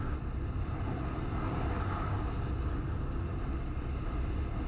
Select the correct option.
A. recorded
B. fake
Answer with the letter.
A